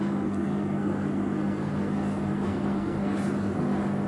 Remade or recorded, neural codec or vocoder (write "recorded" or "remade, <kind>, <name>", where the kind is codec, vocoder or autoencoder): remade, codec, SNAC